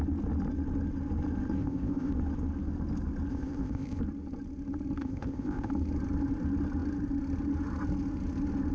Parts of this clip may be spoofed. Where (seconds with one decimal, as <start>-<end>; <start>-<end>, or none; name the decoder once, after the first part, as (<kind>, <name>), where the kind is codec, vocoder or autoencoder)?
1.6-2.1 (codec, ZipCodec); 3.3-4.0; 5.0-5.7